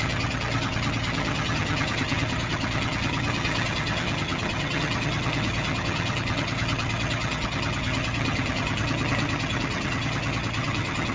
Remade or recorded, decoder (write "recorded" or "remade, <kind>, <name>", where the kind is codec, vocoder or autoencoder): remade, vocoder, HiFi-GAN